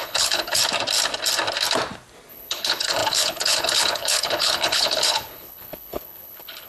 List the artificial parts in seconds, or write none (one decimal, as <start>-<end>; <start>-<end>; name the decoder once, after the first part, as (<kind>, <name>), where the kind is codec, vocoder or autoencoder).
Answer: 0.0-0.6 (codec, HILCodec); 2.3-6.7